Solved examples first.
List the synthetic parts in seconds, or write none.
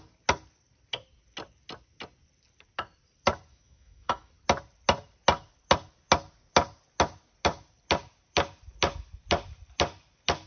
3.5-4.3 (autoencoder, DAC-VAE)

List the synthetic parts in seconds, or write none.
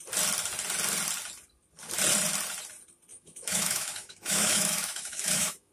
3.1-5.7 (autoencoder, DAC-VAE)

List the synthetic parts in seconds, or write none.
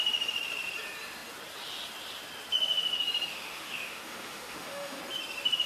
3.3-5.0 (autoencoder, DAC-VAE)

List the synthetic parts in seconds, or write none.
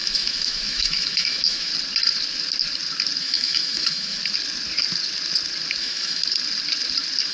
0.0-1.7 (autoencoder, DAC-VAE); 3.2-4.2; 5.8-6.2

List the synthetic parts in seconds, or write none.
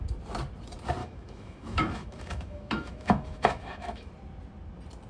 1.0-4.1 (autoencoder, DAC-VAE)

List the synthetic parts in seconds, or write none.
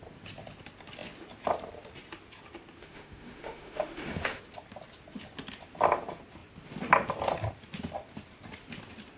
2.8-4.4 (autoencoder, DAC-VAE)